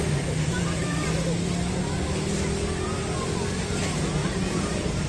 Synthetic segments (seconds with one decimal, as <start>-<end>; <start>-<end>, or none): 4.2-5.1